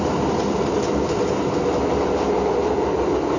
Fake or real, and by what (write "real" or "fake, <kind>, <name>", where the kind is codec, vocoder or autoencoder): real